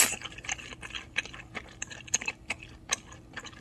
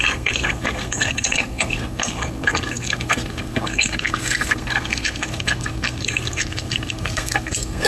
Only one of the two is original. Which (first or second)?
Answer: first